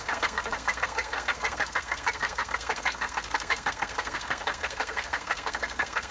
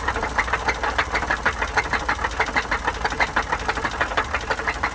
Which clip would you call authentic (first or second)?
second